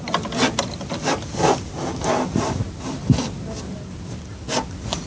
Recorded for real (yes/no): yes